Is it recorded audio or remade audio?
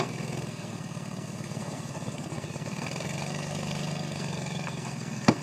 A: remade